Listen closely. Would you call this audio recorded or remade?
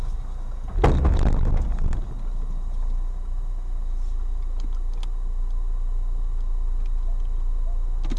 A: recorded